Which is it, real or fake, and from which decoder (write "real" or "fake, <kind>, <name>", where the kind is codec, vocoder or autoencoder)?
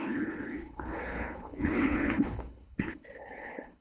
fake, codec, HILCodec